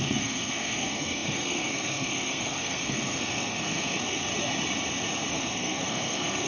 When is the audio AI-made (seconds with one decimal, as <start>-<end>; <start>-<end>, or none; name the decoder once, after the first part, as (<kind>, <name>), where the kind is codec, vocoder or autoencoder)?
0.0-4.3 (codec, SNAC); 5.3-6.5